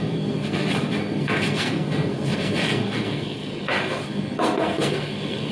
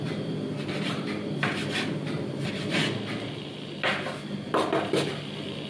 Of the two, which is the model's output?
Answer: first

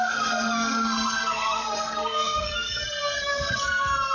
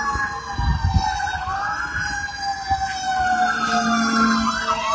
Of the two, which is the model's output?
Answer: first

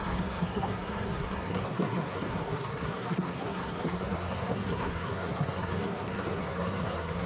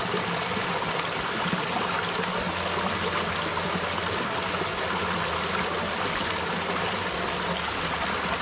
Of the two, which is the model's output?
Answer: first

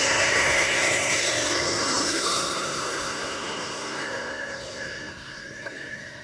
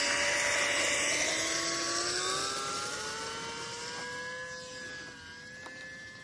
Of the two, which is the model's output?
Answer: first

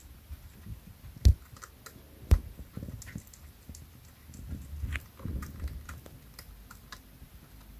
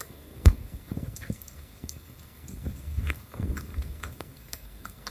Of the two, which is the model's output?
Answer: second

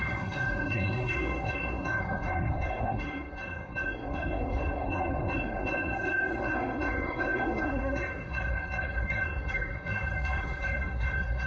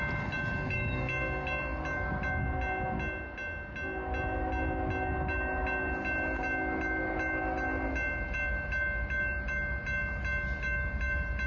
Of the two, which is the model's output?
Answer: first